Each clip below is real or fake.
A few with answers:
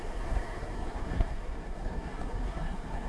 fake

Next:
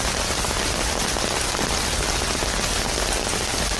real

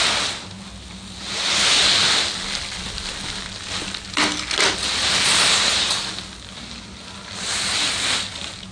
real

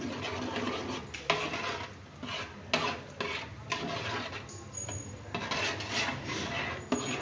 real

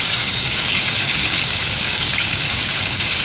fake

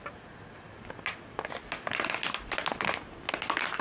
real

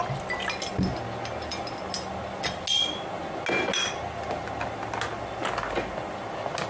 real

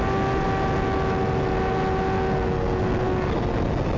real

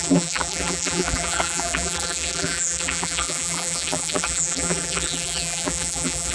fake